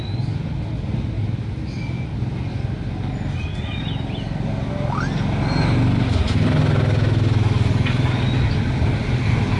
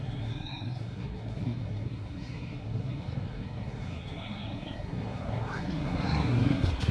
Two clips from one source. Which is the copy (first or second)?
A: second